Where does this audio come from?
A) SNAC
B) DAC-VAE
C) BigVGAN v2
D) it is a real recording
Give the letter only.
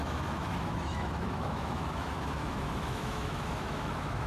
B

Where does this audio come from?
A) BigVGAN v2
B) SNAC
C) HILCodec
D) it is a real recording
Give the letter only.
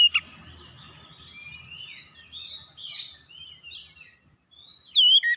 D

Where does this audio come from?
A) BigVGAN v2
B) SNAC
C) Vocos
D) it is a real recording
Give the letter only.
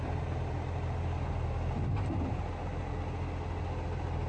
D